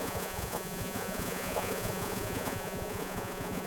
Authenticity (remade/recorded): remade